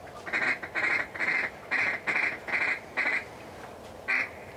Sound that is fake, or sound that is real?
fake